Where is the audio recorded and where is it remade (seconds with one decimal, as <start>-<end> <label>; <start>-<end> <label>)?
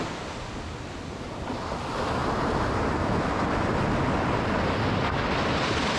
0.0-6.0 recorded